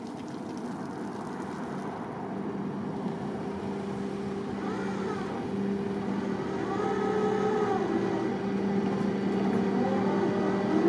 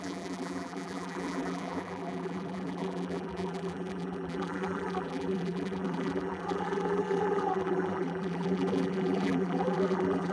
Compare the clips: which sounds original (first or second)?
first